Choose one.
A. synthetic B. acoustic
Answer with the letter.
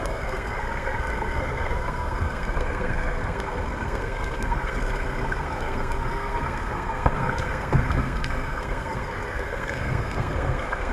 A